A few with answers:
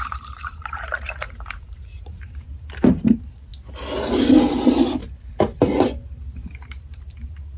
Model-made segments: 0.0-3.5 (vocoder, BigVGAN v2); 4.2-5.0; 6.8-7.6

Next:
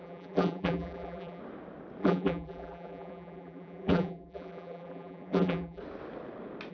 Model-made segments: 0.0-1.4 (vocoder, BigVGAN v2); 2.0-5.8